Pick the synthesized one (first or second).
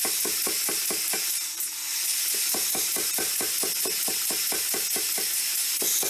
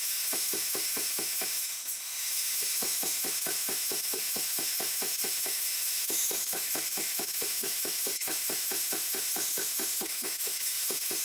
second